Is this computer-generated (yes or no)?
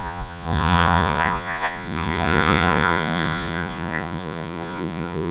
yes